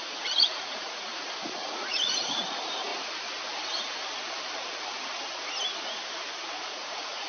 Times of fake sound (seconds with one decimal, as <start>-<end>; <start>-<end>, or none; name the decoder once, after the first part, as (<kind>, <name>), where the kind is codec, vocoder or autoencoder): 0.0-2.9 (vocoder, Vocos); 6.5-7.3